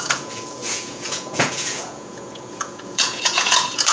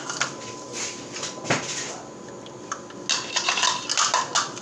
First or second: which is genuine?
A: second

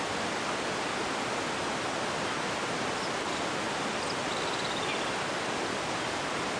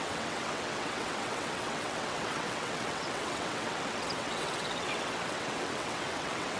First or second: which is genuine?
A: first